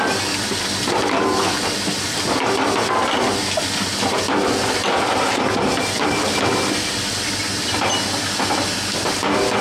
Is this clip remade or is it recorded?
recorded